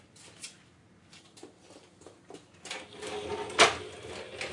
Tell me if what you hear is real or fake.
real